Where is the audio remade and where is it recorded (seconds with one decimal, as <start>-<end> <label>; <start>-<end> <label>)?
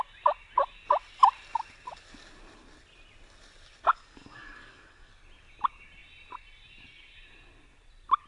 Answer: 0.0-3.9 recorded; 3.9-5.1 remade; 5.1-8.3 recorded